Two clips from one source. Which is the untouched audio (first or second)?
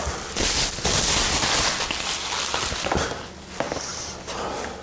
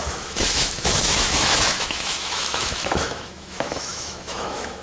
first